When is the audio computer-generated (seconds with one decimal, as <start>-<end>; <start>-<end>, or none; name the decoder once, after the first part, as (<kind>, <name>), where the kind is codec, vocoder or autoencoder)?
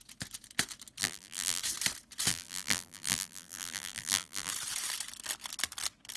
1.0-1.6 (vocoder, BigVGAN v2); 2.3-4.5